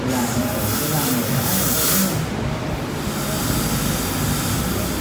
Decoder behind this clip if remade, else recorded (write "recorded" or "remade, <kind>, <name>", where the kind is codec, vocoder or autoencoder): recorded